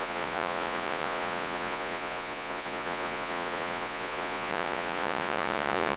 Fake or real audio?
fake